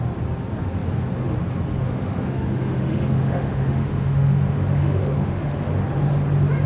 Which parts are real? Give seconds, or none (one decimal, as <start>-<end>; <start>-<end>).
0.0-1.8; 5.7-6.7